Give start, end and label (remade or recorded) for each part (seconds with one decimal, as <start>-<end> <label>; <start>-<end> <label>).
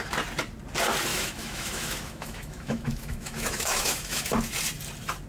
0.0-1.1 recorded; 1.1-4.3 remade; 4.3-5.3 recorded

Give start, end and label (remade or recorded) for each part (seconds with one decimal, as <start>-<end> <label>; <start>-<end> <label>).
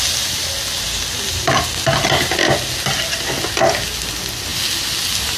0.0-5.4 recorded